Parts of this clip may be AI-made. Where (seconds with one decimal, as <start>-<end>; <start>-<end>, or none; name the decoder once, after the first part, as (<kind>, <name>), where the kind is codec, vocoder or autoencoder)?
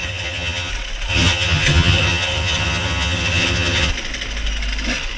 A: 0.0-0.7 (vocoder, HiFi-GAN); 1.1-3.9